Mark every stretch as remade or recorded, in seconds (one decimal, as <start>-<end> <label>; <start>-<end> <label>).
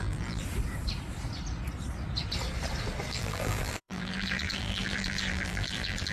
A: 0.0-0.4 remade; 0.4-3.1 recorded; 3.1-6.1 remade